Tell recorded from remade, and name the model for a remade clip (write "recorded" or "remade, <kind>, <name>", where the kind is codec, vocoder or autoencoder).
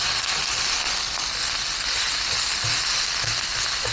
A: recorded